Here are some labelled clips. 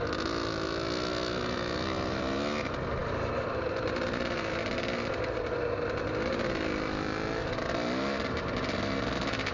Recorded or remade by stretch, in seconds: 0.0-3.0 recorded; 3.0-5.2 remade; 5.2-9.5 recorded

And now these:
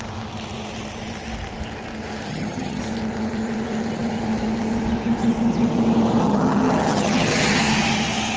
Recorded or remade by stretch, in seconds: 0.0-2.3 recorded; 2.3-2.8 remade; 2.8-6.2 recorded; 6.2-7.6 remade; 7.6-8.4 recorded

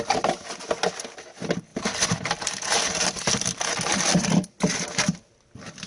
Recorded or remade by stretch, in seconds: 0.0-5.9 recorded

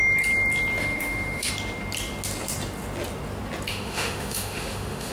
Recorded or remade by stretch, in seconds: 0.0-0.8 recorded; 0.8-1.5 remade; 1.5-3.7 recorded; 3.7-5.1 remade

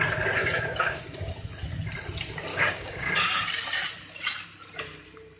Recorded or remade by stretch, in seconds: 0.0-0.4 recorded; 0.4-1.0 remade; 1.0-2.5 recorded; 2.5-3.1 remade; 3.1-5.4 recorded